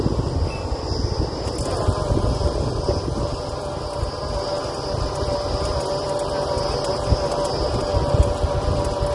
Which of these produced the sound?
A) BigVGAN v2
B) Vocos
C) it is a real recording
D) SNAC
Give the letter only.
C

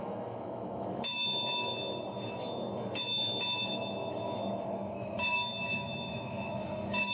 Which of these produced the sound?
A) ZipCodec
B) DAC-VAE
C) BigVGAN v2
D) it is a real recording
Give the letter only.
B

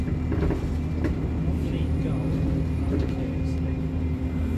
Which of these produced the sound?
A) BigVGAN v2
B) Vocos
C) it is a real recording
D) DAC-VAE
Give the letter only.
C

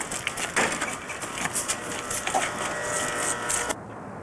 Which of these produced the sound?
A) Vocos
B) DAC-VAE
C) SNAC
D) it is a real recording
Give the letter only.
D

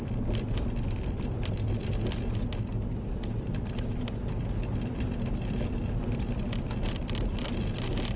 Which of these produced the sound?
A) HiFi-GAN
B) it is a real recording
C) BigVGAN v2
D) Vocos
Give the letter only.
B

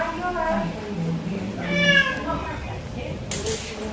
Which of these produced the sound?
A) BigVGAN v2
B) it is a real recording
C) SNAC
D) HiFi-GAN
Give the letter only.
B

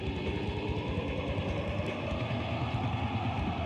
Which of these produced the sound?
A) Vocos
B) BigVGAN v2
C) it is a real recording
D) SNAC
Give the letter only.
C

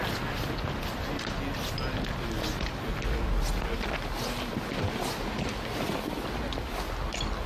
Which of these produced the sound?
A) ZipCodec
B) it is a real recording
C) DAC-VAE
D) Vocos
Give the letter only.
B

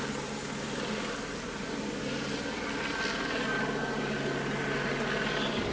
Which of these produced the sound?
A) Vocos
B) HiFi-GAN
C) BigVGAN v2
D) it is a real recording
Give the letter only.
D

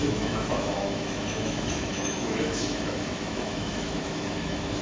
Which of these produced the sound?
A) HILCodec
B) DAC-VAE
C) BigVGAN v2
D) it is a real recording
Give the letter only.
B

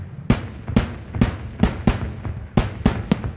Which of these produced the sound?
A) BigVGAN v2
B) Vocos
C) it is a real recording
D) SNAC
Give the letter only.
C